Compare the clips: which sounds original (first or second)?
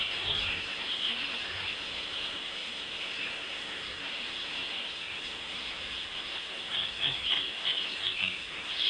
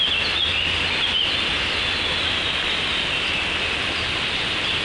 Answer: second